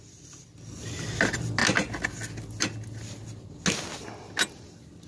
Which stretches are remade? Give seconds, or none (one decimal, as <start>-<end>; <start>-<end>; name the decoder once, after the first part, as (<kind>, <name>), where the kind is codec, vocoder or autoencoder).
none

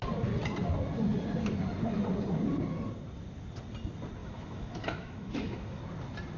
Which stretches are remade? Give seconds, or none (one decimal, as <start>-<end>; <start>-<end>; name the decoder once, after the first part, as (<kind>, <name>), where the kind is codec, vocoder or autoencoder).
4.2-5.8 (autoencoder, DAC-VAE)

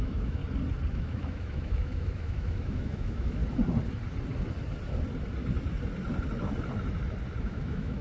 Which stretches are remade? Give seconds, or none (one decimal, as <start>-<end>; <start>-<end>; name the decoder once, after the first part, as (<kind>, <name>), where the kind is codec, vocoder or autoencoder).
0.0-0.4 (autoencoder, DAC-VAE); 0.9-3.4; 7.4-8.0

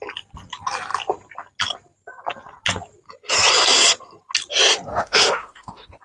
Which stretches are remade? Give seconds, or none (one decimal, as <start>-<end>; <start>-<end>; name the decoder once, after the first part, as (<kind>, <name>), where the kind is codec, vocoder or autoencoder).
4.9-6.0 (autoencoder, DAC-VAE)